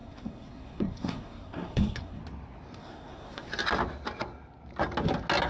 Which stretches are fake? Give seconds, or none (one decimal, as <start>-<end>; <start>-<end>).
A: 0.0-2.2; 2.8-3.5